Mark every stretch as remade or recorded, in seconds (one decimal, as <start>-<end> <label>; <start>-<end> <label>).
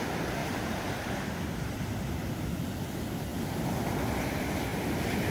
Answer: 0.0-0.4 recorded; 0.4-2.3 remade; 2.3-5.3 recorded